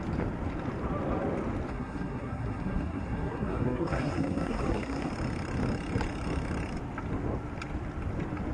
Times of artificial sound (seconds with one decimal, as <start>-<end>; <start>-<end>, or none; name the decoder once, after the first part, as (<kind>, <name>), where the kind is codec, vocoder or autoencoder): 1.7-5.1 (codec, SNAC)